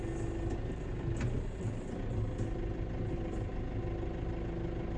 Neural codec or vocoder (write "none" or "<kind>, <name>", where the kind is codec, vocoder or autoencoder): none